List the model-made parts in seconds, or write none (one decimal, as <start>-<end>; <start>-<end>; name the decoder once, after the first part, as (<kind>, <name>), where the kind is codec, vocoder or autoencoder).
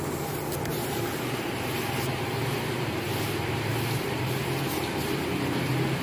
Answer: 0.7-4.3 (vocoder, BigVGAN v2)